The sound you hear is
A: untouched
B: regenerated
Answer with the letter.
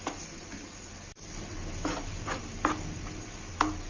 A